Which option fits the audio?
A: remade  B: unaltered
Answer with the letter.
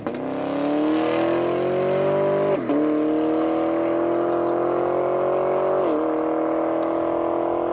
B